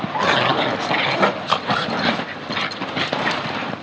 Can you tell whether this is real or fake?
real